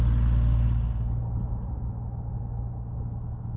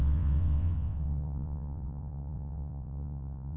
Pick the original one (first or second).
first